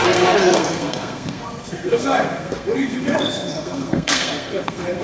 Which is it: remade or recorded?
remade